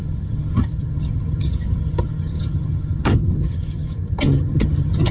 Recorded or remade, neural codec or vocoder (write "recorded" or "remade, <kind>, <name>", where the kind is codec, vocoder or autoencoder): remade, vocoder, HiFi-GAN